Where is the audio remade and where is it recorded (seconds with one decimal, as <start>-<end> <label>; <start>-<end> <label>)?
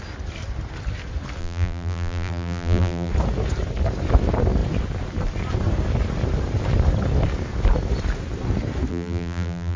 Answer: 0.0-1.4 recorded; 1.4-3.1 remade; 3.1-8.9 recorded; 8.9-9.8 remade